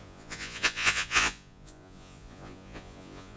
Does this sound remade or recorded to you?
remade